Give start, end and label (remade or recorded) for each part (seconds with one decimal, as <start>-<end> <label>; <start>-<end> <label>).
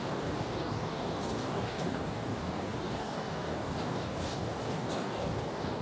0.0-5.8 remade